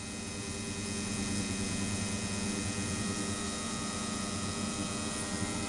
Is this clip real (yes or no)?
no